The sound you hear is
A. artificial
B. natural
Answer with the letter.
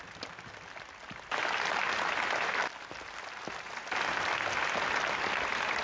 B